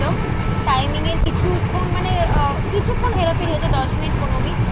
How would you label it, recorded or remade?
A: recorded